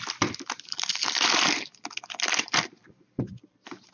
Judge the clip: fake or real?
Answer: real